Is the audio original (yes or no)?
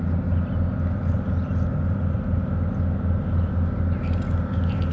yes